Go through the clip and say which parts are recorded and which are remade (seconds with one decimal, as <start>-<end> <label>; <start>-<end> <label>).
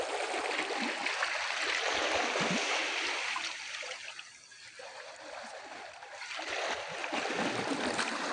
0.0-8.3 recorded